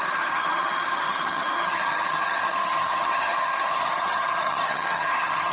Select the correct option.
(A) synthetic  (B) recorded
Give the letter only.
A